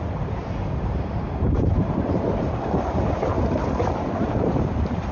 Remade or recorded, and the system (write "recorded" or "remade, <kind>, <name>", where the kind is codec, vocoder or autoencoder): remade, vocoder, BigVGAN v2